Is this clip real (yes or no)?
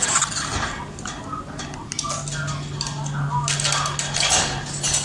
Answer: yes